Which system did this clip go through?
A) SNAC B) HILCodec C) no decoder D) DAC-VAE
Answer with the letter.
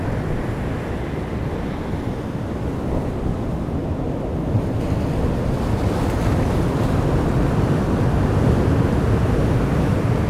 C